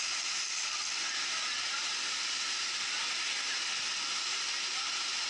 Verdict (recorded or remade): recorded